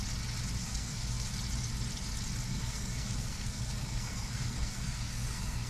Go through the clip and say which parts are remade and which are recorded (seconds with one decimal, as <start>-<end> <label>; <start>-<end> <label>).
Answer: 0.0-0.6 recorded; 0.6-1.3 remade; 1.3-2.5 recorded; 2.5-5.7 remade

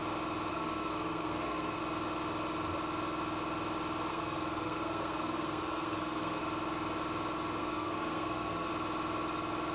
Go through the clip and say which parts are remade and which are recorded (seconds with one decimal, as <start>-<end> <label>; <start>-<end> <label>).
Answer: 0.0-0.5 recorded; 0.5-1.8 remade; 1.8-4.1 recorded; 4.1-6.4 remade; 6.4-7.6 recorded; 7.6-8.7 remade; 8.7-9.7 recorded

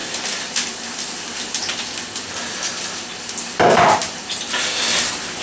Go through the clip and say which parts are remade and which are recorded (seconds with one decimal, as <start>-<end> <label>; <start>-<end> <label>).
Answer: 0.0-5.4 recorded